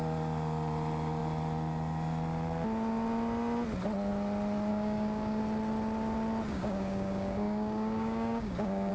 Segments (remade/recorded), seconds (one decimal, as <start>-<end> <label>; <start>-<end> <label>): 0.0-4.7 recorded; 4.7-5.4 remade; 5.4-6.5 recorded; 6.5-8.9 remade